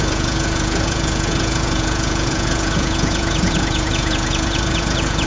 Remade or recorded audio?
remade